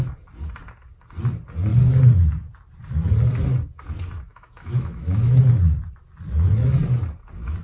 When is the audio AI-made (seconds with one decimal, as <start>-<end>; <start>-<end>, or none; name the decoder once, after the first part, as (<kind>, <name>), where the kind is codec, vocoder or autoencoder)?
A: 4.3-5.4 (autoencoder, DAC-VAE)